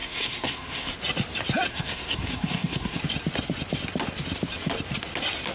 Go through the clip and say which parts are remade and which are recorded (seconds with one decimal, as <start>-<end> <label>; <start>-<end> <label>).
0.0-0.9 remade; 0.9-1.7 recorded; 1.7-3.0 remade; 3.0-5.5 recorded